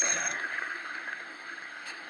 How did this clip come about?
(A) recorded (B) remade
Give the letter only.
B